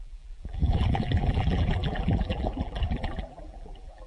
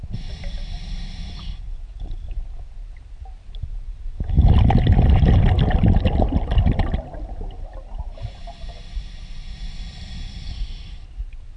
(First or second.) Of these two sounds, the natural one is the second